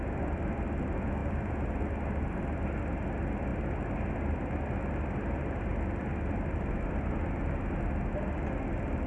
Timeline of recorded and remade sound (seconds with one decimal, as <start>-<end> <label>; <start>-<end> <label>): 0.0-9.1 recorded